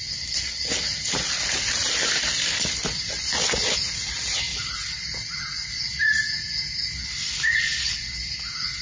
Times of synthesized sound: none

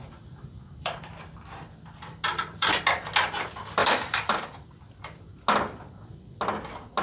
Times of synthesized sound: 0.0-1.1; 2.3-2.8; 3.8-5.3

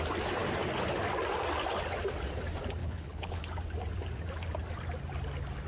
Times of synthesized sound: 2.8-3.4

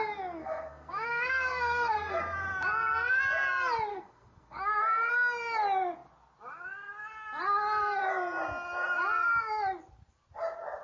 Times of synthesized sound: 0.4-2.2; 3.9-5.1

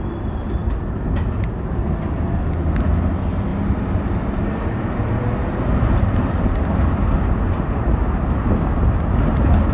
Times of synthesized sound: none

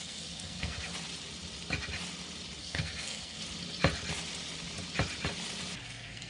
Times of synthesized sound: 0.0-0.9; 2.6-3.4; 5.8-6.3